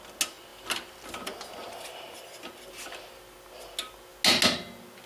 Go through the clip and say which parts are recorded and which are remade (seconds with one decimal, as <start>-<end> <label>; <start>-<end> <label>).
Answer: 0.0-5.1 recorded